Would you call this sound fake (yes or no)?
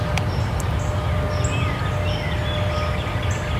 no